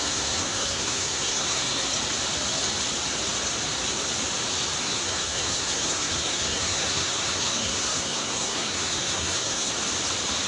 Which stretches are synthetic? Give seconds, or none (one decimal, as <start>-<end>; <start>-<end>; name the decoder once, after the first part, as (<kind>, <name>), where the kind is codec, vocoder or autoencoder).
0.0-1.6 (codec, SNAC); 4.8-9.7